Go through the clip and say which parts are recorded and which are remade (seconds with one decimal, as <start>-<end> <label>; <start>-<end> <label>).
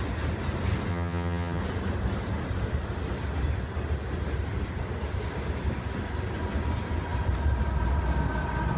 0.0-0.9 recorded; 0.9-1.6 remade; 1.6-8.8 recorded